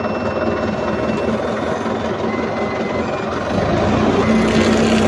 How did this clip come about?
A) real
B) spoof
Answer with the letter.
A